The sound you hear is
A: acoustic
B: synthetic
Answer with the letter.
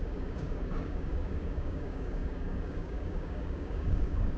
B